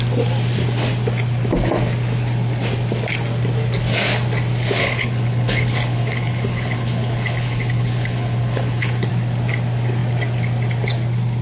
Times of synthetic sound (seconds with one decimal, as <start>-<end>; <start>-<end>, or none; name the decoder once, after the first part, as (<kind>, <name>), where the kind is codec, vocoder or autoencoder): 4.8-9.1 (codec, HILCodec)